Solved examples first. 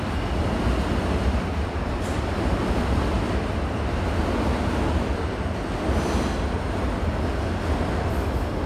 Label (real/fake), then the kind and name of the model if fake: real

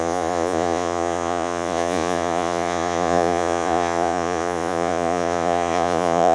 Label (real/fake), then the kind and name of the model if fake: fake, vocoder, Vocos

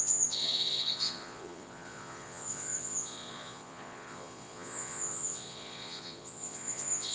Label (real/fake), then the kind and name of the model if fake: fake, vocoder, Vocos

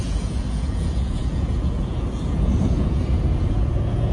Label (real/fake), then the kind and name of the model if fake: fake, vocoder, Vocos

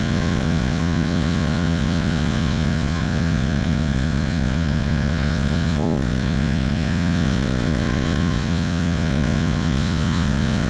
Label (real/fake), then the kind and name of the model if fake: fake, vocoder, Vocos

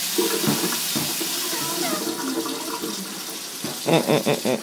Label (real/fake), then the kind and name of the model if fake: real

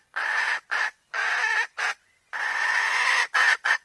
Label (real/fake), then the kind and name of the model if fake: fake, vocoder, Vocos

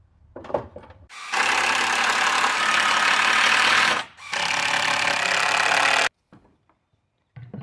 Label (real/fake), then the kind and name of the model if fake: real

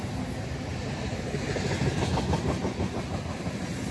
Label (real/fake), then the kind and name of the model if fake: real